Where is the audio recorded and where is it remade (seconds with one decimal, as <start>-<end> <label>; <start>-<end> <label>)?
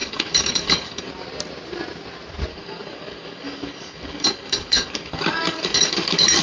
0.0-1.1 remade; 1.1-2.5 recorded; 2.5-6.4 remade